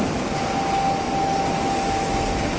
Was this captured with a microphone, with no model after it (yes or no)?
yes